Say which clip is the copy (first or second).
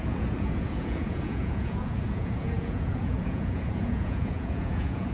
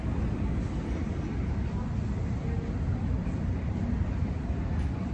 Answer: first